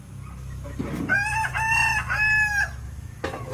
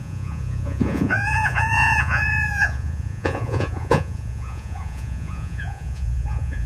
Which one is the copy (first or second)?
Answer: second